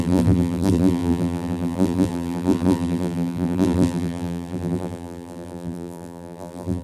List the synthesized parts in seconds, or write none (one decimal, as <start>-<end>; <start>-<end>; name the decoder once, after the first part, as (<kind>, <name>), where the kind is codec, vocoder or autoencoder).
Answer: 0.0-6.8 (vocoder, BigVGAN v2)